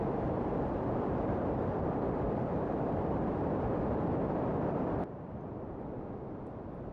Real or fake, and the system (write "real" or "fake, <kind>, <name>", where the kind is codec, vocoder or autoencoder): fake, vocoder, BigVGAN v2